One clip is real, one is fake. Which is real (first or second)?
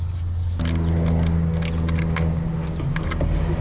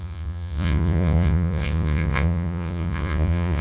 first